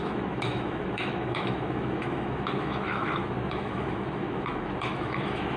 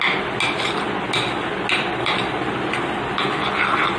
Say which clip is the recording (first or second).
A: second